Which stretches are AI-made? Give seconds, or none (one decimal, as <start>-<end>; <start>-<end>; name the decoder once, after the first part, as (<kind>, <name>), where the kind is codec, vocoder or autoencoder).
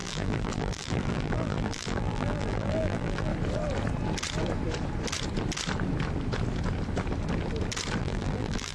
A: 0.0-3.3 (vocoder, BigVGAN v2); 8.0-8.7